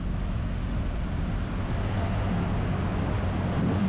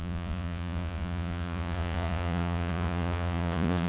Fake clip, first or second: second